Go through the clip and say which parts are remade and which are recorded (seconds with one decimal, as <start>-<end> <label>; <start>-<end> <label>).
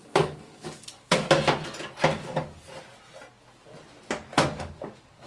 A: 0.0-1.2 remade; 1.2-2.1 recorded; 2.1-2.6 remade; 2.6-4.3 recorded; 4.3-5.3 remade